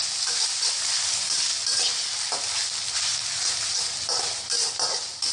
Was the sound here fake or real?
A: real